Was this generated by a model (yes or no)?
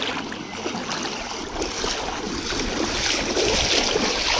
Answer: no